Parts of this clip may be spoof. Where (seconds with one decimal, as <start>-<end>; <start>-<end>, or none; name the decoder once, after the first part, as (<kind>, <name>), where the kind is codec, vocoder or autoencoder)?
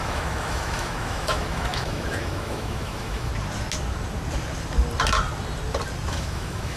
0.0-3.3 (autoencoder, DAC-VAE); 6.1-6.8